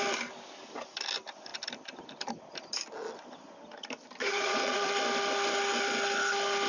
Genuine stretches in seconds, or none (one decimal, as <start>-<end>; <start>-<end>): 0.0-4.2; 5.0-6.7